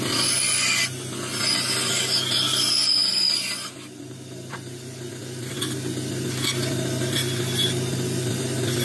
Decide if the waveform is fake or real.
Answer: real